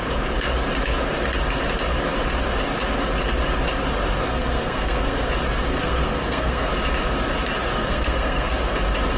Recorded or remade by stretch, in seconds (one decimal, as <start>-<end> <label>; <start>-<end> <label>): 0.0-4.3 recorded; 4.3-5.3 remade; 5.3-5.7 recorded; 5.7-6.7 remade; 6.7-7.7 recorded; 7.7-8.5 remade; 8.5-9.2 recorded